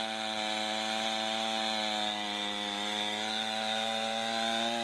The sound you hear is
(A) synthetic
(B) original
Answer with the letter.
B